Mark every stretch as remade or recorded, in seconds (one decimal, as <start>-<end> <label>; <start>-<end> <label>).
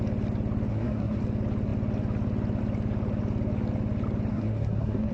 0.0-0.7 recorded; 0.7-1.2 remade; 1.2-4.3 recorded; 4.3-5.1 remade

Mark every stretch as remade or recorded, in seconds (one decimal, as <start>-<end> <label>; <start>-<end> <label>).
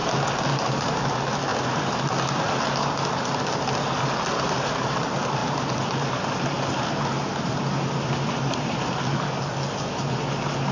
0.0-10.7 recorded